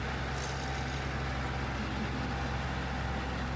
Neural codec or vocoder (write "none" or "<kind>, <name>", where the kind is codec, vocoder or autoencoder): none